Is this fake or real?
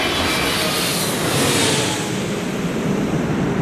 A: real